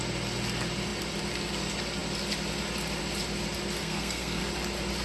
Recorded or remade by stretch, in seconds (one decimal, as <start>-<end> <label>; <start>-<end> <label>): 0.0-3.8 recorded; 3.8-4.4 remade; 4.4-5.0 recorded